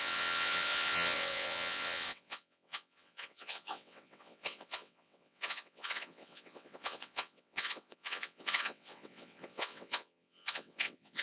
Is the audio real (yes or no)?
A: no